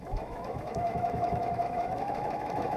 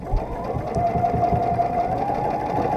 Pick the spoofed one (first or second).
first